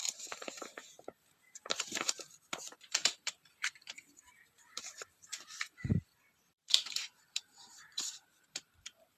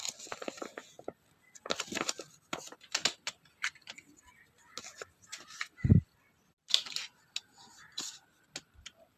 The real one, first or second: second